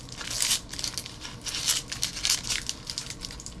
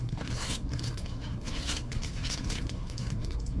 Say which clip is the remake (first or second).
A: second